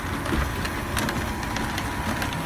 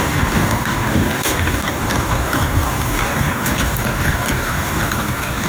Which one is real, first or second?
first